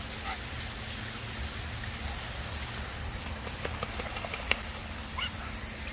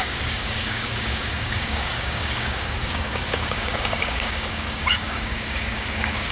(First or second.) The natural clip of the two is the first